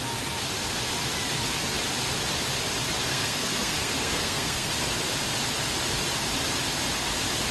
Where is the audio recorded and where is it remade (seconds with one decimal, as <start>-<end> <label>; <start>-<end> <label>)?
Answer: 0.0-3.1 recorded; 3.1-4.7 remade; 4.7-7.5 recorded